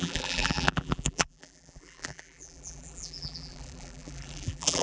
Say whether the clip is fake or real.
fake